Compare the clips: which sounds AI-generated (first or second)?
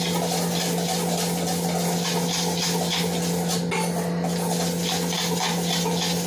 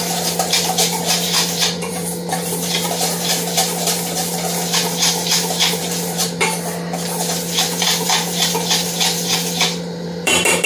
second